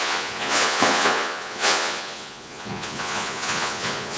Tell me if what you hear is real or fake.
fake